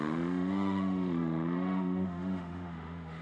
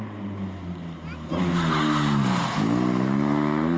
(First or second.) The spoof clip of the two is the first